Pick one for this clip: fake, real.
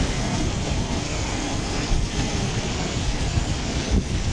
fake